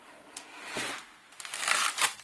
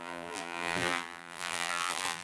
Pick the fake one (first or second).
second